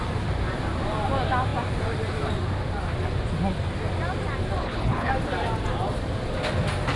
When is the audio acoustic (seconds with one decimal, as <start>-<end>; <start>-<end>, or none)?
0.0-4.6; 5.1-7.0